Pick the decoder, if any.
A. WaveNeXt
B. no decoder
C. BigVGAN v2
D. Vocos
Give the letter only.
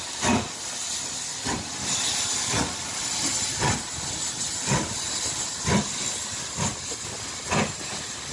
B